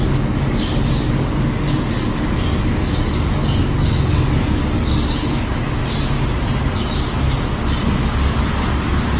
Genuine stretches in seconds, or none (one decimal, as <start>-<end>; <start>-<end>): 5.8-8.1